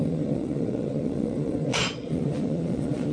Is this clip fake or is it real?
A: fake